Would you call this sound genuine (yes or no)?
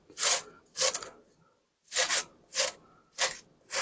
yes